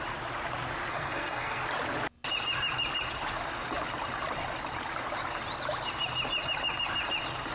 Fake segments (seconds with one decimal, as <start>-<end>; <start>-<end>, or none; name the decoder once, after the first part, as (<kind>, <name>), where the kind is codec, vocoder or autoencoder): 0.9-1.6 (codec, SNAC)